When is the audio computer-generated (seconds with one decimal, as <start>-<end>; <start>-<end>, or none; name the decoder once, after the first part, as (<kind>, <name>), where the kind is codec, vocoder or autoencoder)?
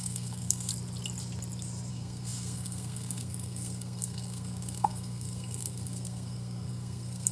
0.0-0.7 (codec, SNAC); 1.9-7.3